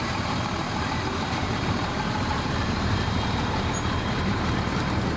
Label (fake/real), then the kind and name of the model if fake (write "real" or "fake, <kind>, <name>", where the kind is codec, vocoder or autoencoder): fake, vocoder, BigVGAN v2